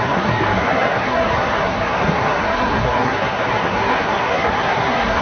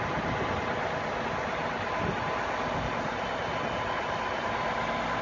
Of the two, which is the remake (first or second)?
first